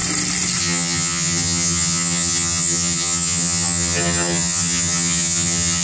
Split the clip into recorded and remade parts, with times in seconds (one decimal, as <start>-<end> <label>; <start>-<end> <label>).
0.0-0.6 recorded; 0.6-5.8 remade